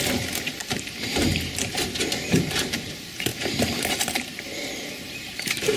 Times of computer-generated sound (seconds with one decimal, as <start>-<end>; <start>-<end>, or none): 0.0-4.5; 5.2-5.8